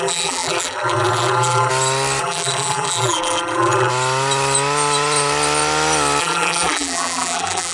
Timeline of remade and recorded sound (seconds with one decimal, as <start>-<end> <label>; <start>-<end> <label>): 0.0-1.7 remade; 1.7-2.2 recorded; 2.2-3.9 remade; 3.9-6.2 recorded; 6.2-7.7 remade